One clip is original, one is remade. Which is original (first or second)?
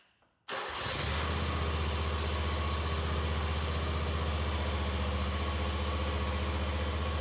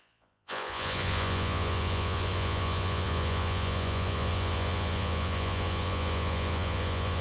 first